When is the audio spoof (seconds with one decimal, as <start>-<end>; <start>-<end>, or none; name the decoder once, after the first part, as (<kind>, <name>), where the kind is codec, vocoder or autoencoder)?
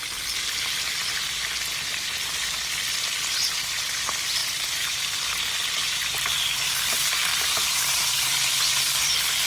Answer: 4.4-5.0 (vocoder, BigVGAN v2); 7.3-8.5